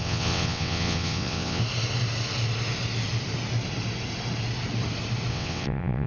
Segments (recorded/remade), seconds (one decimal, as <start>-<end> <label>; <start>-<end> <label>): 0.0-1.6 remade; 1.6-5.3 recorded; 5.3-6.1 remade

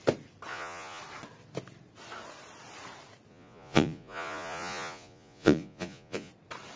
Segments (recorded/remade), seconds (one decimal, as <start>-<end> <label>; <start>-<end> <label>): 0.0-0.5 recorded; 0.5-1.0 remade; 1.0-3.3 recorded; 3.3-6.3 remade; 6.3-6.8 recorded

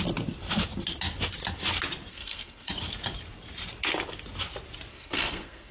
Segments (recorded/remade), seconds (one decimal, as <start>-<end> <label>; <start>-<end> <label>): 0.0-2.1 recorded; 2.1-2.7 remade; 2.7-4.9 recorded; 4.9-5.7 remade

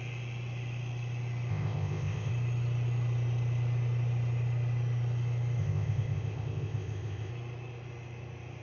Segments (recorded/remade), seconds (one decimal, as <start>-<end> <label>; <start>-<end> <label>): 0.0-1.5 recorded; 1.5-2.3 remade; 2.3-5.6 recorded; 5.6-7.3 remade; 7.3-8.6 recorded

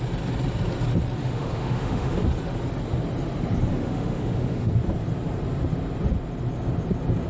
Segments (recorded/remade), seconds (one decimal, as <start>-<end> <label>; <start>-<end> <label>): 0.0-1.2 recorded; 1.2-2.2 remade; 2.2-3.7 recorded; 3.7-4.7 remade; 4.7-7.3 recorded

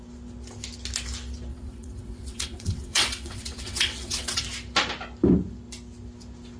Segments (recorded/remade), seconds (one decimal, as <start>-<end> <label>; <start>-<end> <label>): 0.0-1.5 recorded; 1.5-4.4 remade; 4.4-6.6 recorded

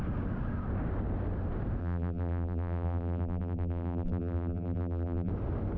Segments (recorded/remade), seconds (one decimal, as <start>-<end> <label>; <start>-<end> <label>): 0.0-1.8 recorded; 1.8-5.3 remade; 5.3-5.8 recorded

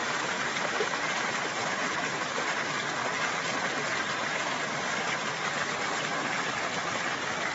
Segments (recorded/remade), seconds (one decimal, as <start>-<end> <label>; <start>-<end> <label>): 0.0-2.7 remade; 2.7-3.9 recorded; 3.9-6.2 remade; 6.2-7.5 recorded